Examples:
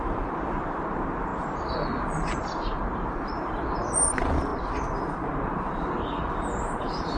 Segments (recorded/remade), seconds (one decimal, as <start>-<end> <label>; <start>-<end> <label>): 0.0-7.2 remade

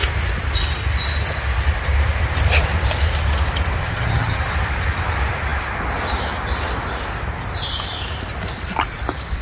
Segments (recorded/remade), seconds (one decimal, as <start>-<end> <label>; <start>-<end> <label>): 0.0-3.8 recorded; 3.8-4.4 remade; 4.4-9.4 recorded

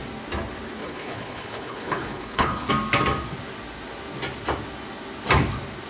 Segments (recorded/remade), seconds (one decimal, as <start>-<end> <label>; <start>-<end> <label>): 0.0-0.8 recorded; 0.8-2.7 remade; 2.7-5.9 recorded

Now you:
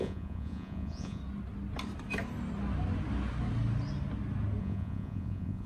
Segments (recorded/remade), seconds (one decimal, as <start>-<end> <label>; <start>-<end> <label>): 0.0-1.2 remade; 1.2-4.6 recorded; 4.6-5.7 remade

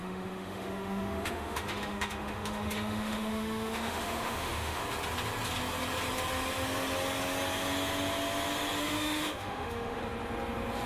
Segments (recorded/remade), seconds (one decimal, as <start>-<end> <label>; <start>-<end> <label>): 0.0-4.8 remade; 4.8-8.8 recorded; 8.8-10.0 remade; 10.0-10.9 recorded